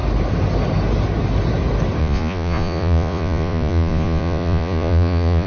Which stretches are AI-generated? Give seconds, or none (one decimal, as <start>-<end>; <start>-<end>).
2.0-5.5